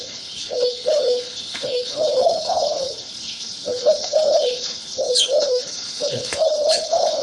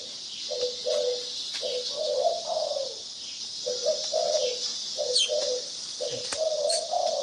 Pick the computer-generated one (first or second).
first